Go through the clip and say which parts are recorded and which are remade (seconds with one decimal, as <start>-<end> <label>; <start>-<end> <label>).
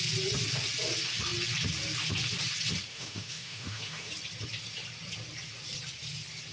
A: 0.0-2.9 recorded; 2.9-4.1 remade; 4.1-6.5 recorded